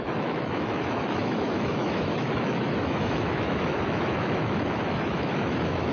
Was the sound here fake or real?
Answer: fake